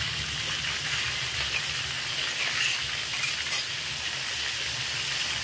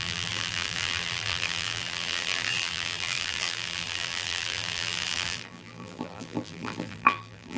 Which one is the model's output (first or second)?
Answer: second